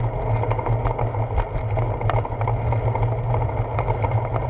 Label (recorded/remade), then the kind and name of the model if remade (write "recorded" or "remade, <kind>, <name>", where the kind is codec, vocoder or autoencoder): recorded